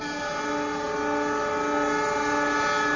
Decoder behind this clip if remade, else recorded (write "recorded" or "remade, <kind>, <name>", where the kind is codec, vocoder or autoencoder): recorded